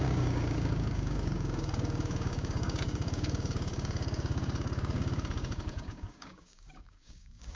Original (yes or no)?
no